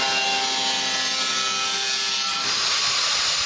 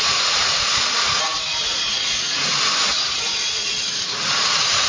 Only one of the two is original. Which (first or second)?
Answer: first